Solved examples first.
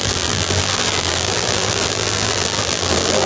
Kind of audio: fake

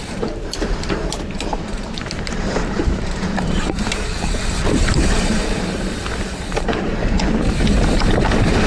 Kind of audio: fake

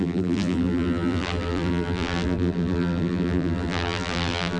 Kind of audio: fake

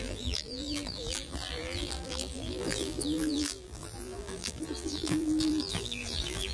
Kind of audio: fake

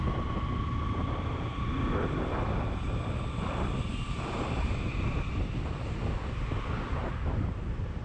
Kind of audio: real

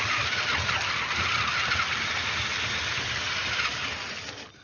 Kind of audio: real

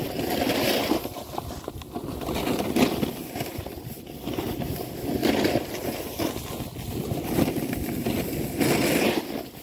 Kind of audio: real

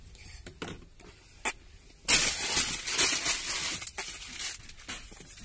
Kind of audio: real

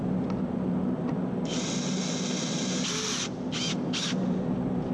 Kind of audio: real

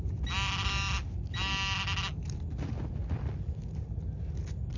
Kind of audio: real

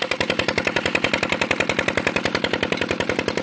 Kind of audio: real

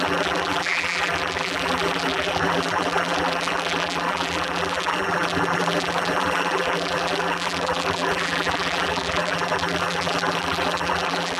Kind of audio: fake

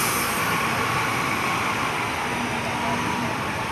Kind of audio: real